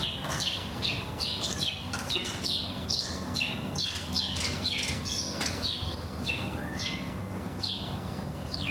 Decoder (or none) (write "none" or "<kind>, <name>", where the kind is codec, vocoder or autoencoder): codec, SNAC